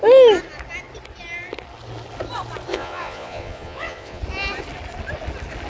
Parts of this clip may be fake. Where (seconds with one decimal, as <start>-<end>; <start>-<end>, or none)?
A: 2.7-4.2